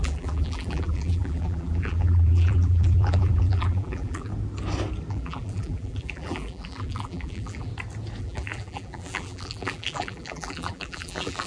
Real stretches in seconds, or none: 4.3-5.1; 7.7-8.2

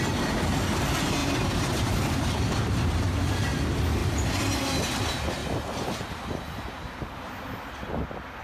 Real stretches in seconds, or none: 0.0-1.2; 2.3-5.4; 7.6-8.4

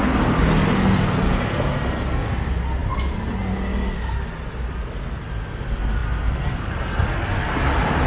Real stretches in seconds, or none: 0.0-8.1

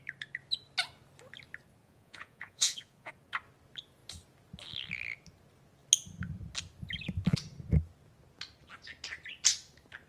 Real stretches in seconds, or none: 0.0-1.8; 3.1-10.1

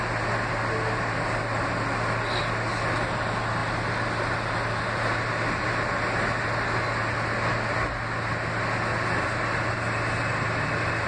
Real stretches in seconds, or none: 0.0-11.1

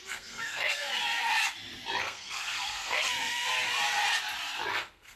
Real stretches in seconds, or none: 0.9-2.0; 3.5-4.7

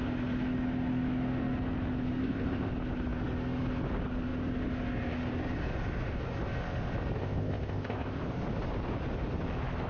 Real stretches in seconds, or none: 0.0-2.2; 2.7-7.2; 8.2-9.9

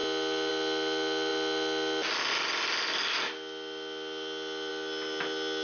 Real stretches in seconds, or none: 0.0-5.6